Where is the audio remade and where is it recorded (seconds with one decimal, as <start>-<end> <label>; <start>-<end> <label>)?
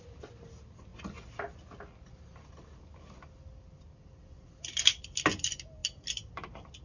0.0-6.8 recorded